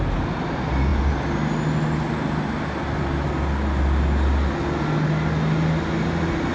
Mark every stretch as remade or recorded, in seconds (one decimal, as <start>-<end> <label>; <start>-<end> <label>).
0.0-6.5 recorded